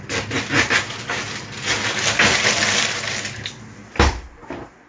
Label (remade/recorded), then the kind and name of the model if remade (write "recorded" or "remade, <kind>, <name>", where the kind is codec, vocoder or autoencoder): recorded